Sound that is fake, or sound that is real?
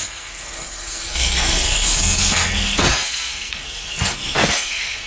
fake